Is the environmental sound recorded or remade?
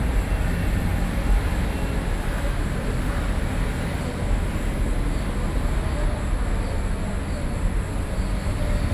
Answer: recorded